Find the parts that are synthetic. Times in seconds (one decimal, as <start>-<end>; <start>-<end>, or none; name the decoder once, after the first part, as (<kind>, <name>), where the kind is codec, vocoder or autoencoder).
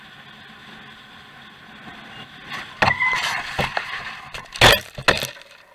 none